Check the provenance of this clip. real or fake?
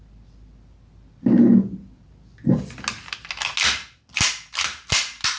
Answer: real